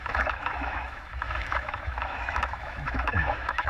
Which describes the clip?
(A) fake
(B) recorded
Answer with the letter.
A